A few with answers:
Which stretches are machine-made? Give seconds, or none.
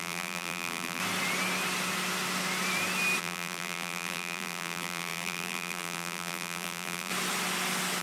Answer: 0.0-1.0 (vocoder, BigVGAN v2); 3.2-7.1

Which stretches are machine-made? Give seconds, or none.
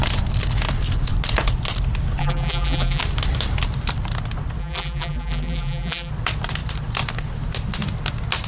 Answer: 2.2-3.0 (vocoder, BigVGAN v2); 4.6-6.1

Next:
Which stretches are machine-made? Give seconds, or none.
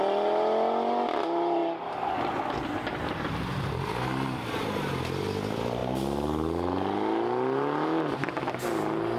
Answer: none